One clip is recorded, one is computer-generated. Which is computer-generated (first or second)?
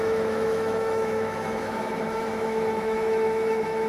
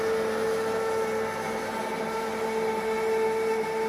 first